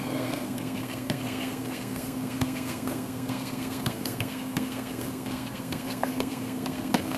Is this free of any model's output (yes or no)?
no